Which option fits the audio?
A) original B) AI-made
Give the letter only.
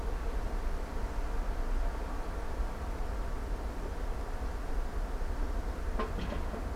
A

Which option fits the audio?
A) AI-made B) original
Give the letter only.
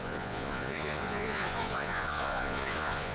A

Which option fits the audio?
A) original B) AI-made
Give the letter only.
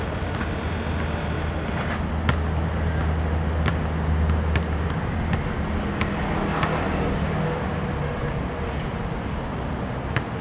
A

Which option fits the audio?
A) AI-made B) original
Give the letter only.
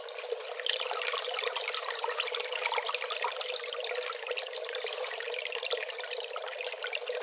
B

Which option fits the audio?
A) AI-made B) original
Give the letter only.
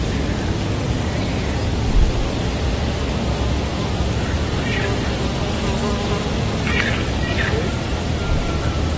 B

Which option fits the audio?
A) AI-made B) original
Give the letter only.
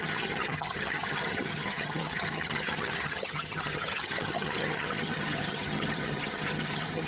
A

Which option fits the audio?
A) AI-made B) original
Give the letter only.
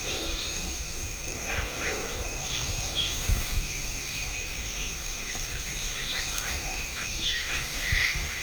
A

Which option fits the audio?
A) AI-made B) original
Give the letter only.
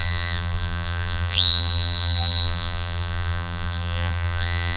A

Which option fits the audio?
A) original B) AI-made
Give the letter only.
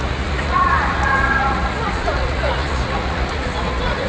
B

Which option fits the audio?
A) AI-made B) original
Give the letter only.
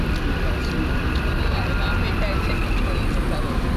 B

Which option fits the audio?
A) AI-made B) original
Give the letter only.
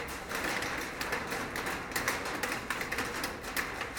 B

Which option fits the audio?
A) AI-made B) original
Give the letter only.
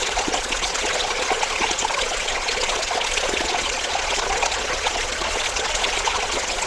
A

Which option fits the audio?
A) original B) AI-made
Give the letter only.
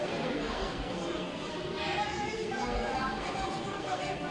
B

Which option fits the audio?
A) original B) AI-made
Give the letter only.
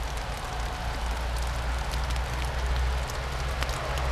A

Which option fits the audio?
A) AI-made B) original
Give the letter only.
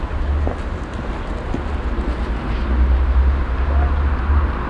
B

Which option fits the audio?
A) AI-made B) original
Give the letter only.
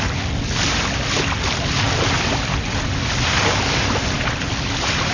B